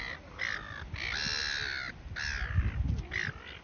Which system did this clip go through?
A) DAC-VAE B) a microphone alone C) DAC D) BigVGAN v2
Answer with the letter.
B